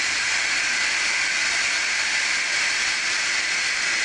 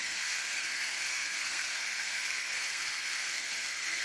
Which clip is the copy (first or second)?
second